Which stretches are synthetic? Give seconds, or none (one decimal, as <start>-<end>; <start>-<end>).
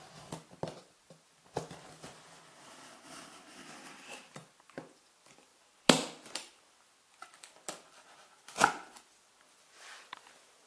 none